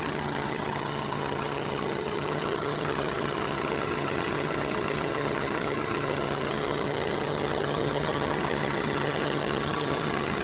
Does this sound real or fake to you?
fake